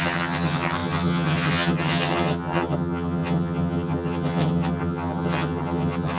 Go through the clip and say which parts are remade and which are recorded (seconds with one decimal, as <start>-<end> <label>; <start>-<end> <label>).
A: 0.0-6.2 remade